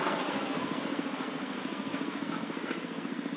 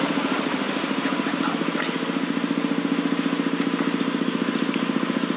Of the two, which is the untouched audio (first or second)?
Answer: second